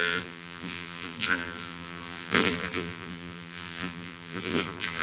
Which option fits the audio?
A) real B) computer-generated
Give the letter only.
B